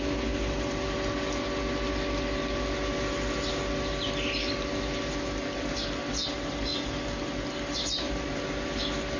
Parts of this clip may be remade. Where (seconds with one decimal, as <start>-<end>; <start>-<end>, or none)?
none